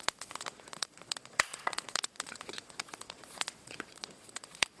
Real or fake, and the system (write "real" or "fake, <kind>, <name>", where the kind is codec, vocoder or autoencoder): fake, vocoder, Vocos